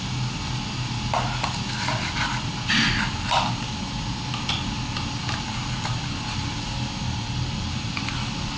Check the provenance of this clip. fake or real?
real